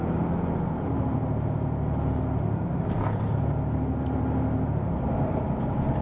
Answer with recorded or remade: recorded